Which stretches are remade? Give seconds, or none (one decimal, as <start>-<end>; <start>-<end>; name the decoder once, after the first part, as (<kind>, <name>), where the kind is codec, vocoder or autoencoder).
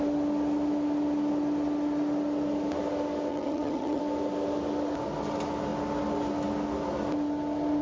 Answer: 3.3-4.0 (vocoder, HiFi-GAN)